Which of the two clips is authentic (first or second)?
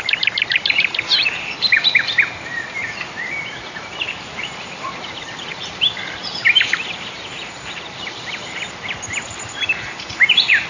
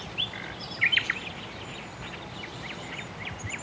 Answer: second